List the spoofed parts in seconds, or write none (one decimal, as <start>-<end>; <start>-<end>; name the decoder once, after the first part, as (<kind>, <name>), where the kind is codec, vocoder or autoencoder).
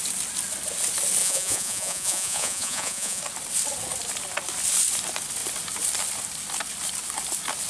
1.2-3.2 (vocoder, Vocos)